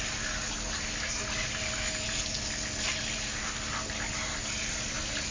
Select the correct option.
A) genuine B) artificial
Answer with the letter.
A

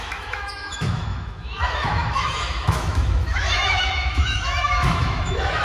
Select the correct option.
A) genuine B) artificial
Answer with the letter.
B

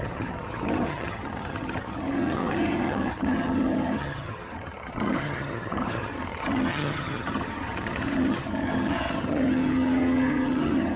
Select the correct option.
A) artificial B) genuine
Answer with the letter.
A